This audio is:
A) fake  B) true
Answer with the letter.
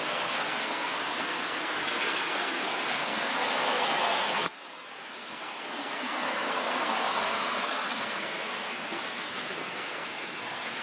A